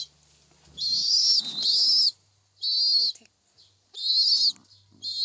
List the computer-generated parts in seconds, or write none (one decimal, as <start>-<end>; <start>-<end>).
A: none